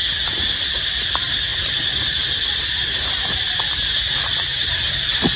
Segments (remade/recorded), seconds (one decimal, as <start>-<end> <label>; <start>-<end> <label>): 0.0-0.5 remade; 0.5-1.5 recorded; 1.5-4.7 remade; 4.7-5.4 recorded

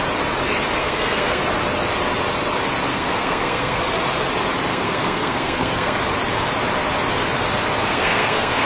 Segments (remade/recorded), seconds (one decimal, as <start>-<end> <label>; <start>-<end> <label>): 0.0-0.8 recorded; 0.8-1.4 remade; 1.4-2.9 recorded; 2.9-3.8 remade; 3.8-4.7 recorded; 4.7-6.0 remade; 6.0-7.9 recorded; 7.9-8.7 remade

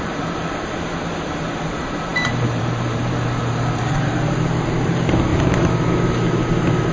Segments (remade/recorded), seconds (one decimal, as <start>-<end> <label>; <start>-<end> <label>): 0.0-5.3 remade; 5.3-6.9 recorded

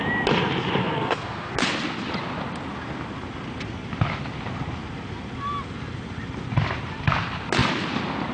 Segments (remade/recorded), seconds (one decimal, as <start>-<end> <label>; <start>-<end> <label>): 0.0-0.8 recorded; 0.8-1.5 remade; 1.5-8.3 recorded